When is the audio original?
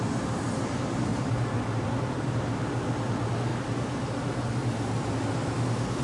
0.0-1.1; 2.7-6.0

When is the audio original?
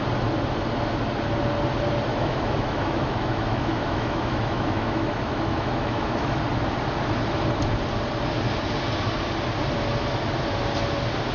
0.0-2.1; 6.4-11.3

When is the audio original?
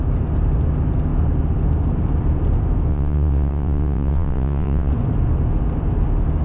0.0-2.9; 4.9-6.4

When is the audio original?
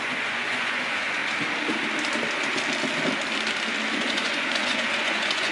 1.2-3.9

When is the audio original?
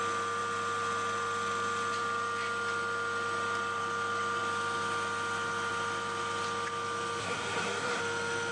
0.0-7.2; 8.0-8.5